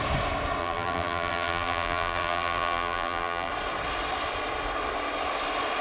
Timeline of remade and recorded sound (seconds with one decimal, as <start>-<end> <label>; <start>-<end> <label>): 0.0-0.6 recorded; 0.6-3.5 remade; 3.5-5.8 recorded